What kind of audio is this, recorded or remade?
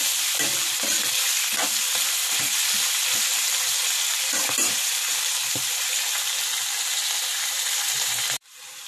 recorded